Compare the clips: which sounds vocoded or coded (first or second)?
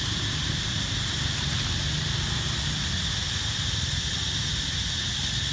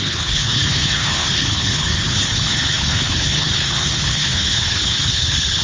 second